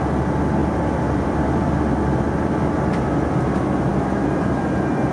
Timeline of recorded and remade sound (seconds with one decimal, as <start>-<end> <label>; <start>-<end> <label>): 0.0-0.6 recorded; 0.6-2.9 remade; 2.9-5.1 recorded